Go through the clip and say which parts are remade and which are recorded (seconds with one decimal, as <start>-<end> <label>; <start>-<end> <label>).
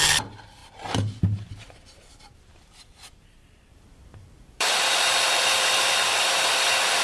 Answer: 0.0-0.6 remade; 0.6-1.2 recorded; 1.2-7.0 remade